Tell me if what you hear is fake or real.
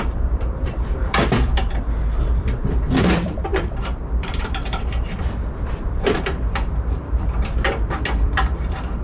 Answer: fake